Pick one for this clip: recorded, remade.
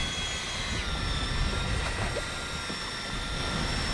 recorded